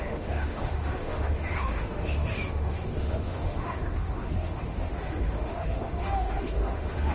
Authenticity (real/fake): fake